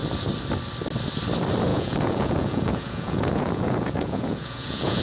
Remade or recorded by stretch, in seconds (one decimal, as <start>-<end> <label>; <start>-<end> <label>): 0.0-1.7 recorded; 1.7-5.0 remade